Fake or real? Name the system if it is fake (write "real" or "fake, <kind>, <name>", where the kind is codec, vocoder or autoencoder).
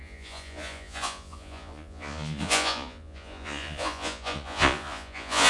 fake, vocoder, Vocos